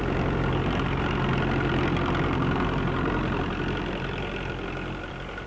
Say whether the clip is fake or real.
real